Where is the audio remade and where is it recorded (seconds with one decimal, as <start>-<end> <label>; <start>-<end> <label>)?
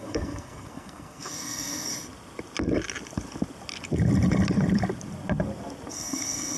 0.0-1.9 remade; 1.9-5.9 recorded; 5.9-6.6 remade